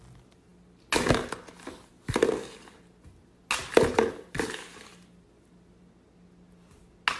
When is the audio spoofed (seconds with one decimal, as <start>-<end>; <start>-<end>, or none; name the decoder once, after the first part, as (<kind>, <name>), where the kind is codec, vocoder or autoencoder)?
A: none